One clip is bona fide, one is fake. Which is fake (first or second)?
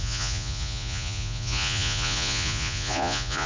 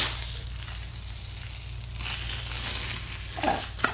first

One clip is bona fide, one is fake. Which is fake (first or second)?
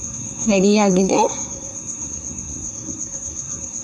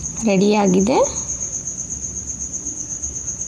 first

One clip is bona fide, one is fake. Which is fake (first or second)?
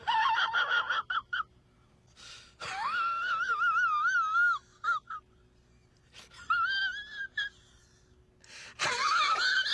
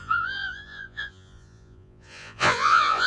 second